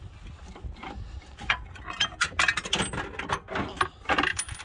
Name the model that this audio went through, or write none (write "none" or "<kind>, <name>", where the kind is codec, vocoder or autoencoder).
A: none